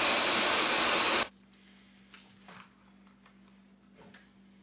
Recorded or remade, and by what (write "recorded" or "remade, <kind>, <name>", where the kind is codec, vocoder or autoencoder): recorded